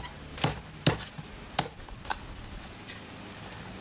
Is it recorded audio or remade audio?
recorded